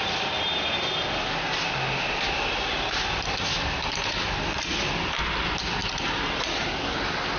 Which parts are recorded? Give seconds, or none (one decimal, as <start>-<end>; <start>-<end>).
0.0-7.4